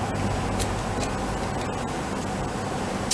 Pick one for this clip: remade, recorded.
recorded